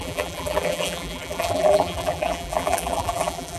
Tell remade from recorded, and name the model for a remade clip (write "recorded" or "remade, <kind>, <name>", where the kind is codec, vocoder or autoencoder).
remade, vocoder, BigVGAN v2